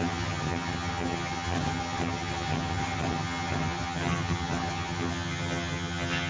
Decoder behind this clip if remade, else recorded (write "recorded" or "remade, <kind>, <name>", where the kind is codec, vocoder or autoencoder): remade, vocoder, HiFi-GAN